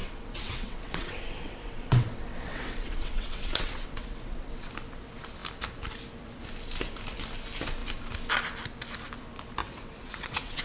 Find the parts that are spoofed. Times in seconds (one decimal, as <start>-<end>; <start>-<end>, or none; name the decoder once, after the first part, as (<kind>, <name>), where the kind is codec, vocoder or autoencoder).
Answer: 0.0-4.7 (vocoder, WaveNeXt); 9.6-10.6